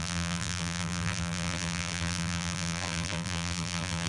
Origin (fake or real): fake